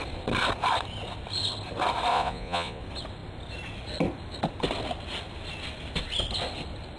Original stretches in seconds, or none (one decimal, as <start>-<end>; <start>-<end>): 0.0-2.1; 2.8-7.0